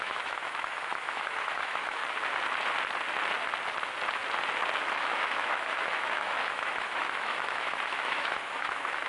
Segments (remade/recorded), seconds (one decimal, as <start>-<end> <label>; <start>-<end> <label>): 0.0-2.0 remade; 2.0-4.8 recorded; 4.8-9.1 remade